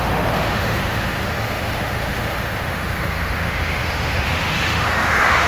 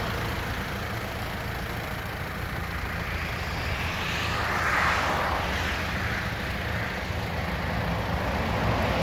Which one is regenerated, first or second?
first